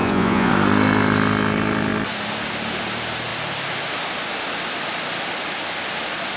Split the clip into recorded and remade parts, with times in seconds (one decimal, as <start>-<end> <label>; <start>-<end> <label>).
0.0-0.5 remade; 0.5-6.4 recorded